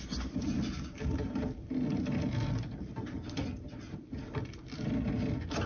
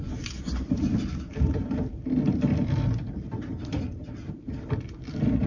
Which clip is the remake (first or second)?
second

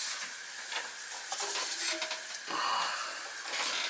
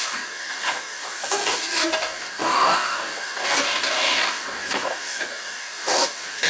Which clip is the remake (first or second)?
second